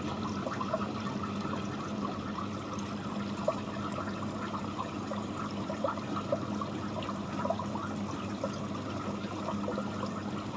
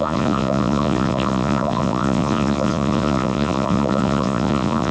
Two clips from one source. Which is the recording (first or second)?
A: first